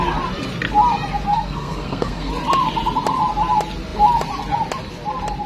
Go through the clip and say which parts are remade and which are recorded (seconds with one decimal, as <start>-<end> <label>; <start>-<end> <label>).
0.0-1.3 recorded; 1.3-2.3 remade; 2.3-5.5 recorded